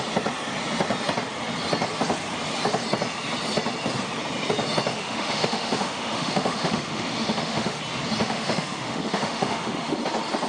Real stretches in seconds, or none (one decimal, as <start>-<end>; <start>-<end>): 0.0-4.9; 7.8-8.2; 10.0-10.5